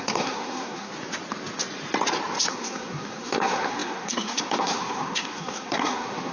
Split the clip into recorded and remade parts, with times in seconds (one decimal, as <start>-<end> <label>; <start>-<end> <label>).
0.0-0.9 remade; 0.9-2.5 recorded; 2.5-6.3 remade